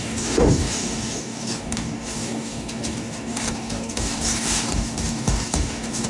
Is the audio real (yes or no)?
no